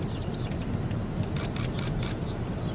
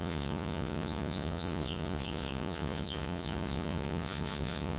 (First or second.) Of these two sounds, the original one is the first